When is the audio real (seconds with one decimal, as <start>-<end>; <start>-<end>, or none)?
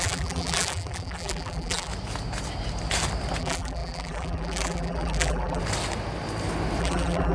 1.9-3.4; 5.6-6.8